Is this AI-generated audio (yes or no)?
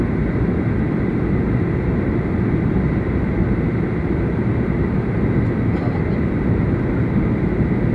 no